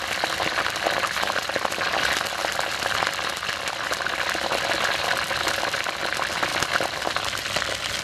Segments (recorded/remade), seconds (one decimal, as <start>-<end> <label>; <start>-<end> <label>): 0.0-8.0 recorded